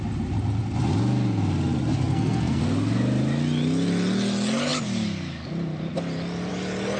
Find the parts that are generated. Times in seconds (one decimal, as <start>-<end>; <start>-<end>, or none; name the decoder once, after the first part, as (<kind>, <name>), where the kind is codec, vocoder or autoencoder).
2.0-2.6 (codec, SNAC)